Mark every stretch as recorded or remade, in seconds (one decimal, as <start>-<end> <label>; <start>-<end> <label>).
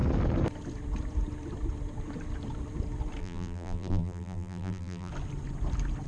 0.0-3.2 recorded; 3.2-5.1 remade; 5.1-6.1 recorded